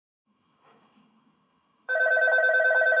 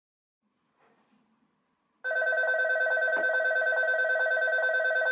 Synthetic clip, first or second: first